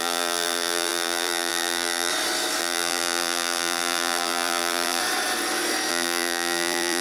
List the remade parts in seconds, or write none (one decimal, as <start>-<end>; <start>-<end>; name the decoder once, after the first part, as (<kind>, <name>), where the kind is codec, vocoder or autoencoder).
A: 0.0-2.1 (vocoder, BigVGAN v2); 2.6-5.0; 5.9-7.0